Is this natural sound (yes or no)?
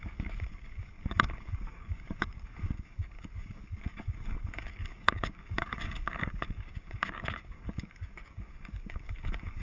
no